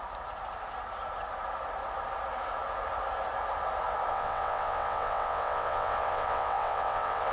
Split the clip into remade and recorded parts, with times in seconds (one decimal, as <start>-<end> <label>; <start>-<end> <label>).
0.0-4.1 recorded; 4.1-7.3 remade